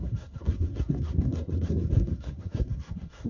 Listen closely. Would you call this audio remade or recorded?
remade